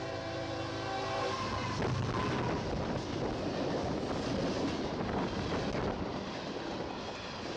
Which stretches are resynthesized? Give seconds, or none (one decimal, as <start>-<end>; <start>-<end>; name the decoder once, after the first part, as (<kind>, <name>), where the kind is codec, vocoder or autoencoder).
none